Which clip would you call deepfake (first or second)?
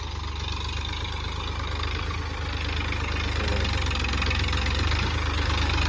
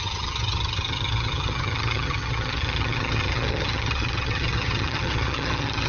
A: second